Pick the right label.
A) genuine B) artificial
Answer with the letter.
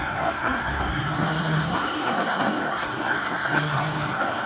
B